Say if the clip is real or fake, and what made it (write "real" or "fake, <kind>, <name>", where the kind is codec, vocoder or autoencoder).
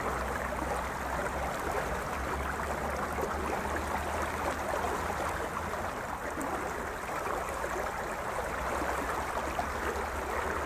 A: real